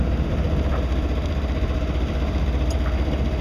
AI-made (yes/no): yes